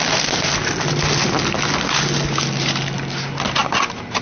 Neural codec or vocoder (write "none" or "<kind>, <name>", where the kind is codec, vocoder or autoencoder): none